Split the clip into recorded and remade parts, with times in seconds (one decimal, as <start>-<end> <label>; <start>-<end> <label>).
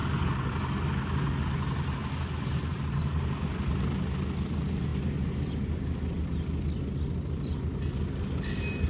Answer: 0.0-8.9 recorded